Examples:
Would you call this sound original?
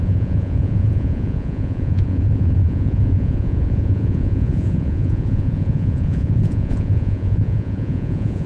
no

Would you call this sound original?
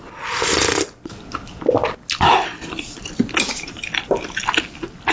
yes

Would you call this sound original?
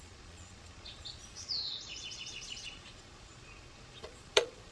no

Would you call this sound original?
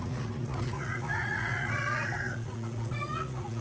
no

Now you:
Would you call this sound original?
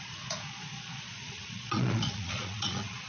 no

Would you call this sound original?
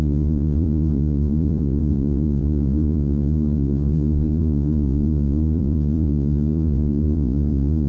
no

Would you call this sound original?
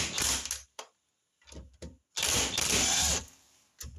yes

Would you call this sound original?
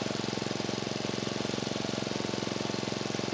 yes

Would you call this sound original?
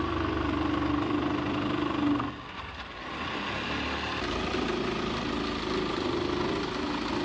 yes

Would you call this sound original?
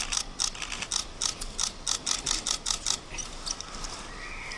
yes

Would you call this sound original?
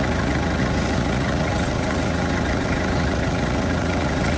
no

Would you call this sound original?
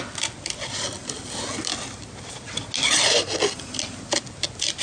yes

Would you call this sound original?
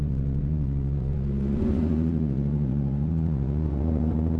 no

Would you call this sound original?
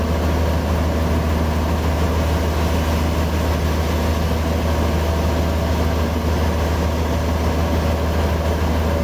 yes